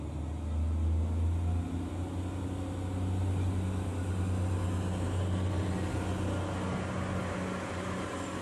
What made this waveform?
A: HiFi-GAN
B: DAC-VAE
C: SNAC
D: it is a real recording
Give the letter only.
D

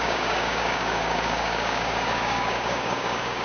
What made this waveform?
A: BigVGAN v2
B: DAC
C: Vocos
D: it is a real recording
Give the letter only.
B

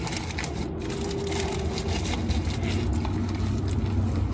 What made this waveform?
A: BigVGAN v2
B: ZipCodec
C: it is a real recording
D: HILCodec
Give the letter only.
C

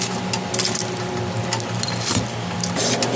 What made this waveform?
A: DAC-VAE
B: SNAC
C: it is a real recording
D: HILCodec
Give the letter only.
C